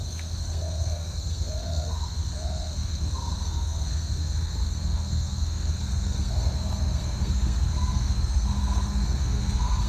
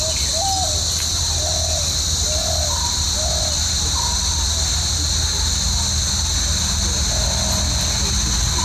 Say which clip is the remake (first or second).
first